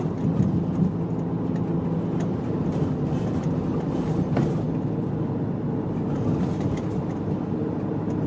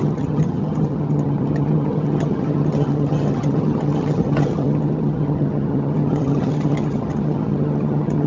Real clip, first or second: first